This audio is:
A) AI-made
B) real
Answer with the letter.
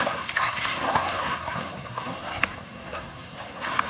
A